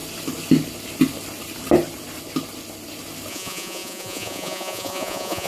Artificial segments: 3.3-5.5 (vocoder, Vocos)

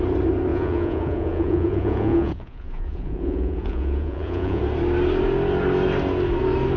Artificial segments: 0.5-4.6 (vocoder, Vocos)

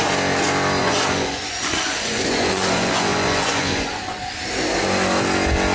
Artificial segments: 0.8-4.2 (vocoder, Vocos)

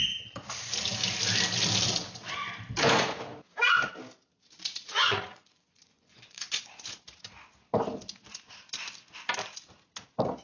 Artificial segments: 4.8-6.7 (vocoder, Vocos)

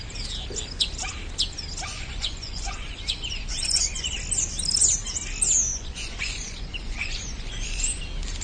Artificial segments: 1.9-4.2 (vocoder, Vocos); 5.7-8.0

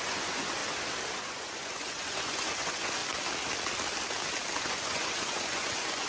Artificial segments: 0.0-0.6 (vocoder, Vocos); 1.2-3.0; 4.6-6.1

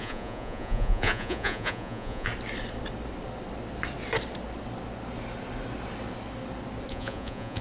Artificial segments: 0.0-2.3 (vocoder, Vocos); 6.9-7.6